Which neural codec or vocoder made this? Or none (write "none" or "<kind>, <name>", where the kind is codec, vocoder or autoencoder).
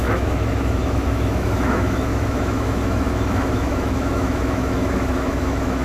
autoencoder, DAC-VAE